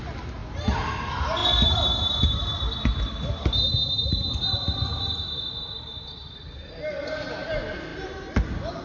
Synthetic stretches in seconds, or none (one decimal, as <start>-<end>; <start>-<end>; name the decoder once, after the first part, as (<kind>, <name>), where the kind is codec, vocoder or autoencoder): none